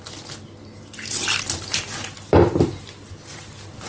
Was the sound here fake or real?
real